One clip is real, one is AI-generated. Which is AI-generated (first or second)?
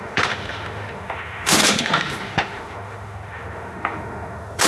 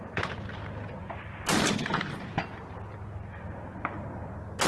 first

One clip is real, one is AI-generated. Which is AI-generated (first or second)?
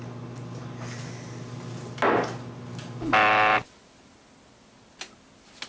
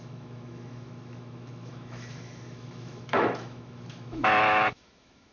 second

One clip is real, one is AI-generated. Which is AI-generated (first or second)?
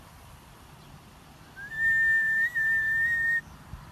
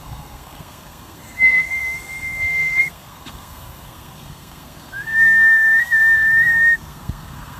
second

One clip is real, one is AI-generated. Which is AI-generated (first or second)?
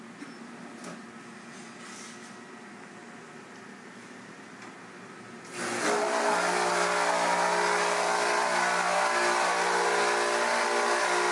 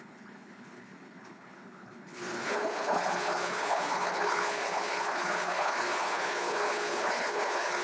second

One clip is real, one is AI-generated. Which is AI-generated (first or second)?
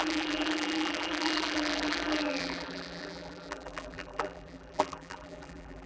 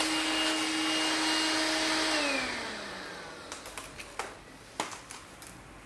first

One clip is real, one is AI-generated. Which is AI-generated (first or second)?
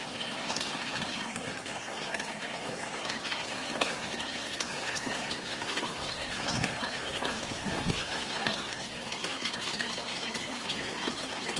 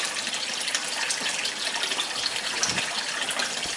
first